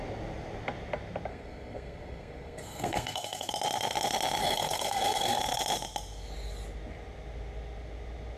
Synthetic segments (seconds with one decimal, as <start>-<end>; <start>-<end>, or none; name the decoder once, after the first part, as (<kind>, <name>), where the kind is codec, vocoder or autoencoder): 1.3-3.5 (codec, SNAC); 4.4-5.4